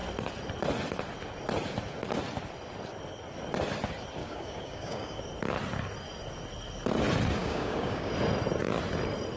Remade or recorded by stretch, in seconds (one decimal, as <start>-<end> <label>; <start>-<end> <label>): 0.0-4.2 recorded; 4.2-5.2 remade; 5.2-7.4 recorded; 7.4-8.1 remade; 8.1-9.4 recorded